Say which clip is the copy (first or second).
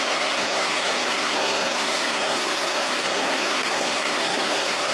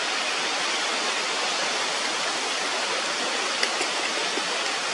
first